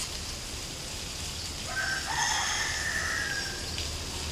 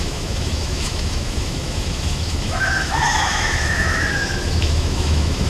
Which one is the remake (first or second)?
second